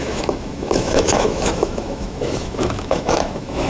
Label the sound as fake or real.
fake